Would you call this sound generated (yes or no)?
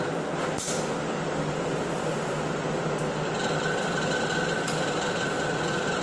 no